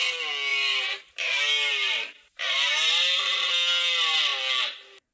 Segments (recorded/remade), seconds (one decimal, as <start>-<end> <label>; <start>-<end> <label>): 0.0-0.5 recorded; 0.5-2.7 remade; 2.7-5.1 recorded